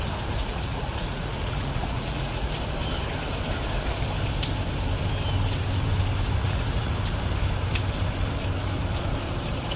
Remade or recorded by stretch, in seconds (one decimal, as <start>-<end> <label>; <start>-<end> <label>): 0.0-0.4 recorded; 0.4-2.5 remade; 2.5-6.4 recorded; 6.4-6.9 remade; 6.9-9.8 recorded